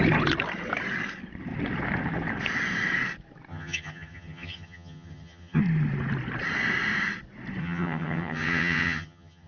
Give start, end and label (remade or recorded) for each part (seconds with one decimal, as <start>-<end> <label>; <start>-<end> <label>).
0.0-3.5 recorded; 3.5-5.6 remade; 5.6-7.6 recorded; 7.6-9.5 remade